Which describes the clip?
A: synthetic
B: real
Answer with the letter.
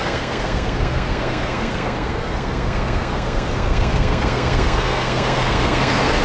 A